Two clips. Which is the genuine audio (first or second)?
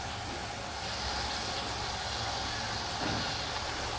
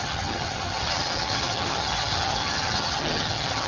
first